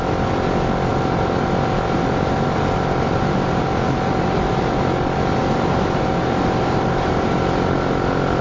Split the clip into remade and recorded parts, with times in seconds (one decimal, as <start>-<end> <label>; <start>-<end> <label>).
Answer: 0.0-0.9 recorded; 0.9-4.8 remade; 4.8-5.4 recorded; 5.4-7.3 remade; 7.3-8.4 recorded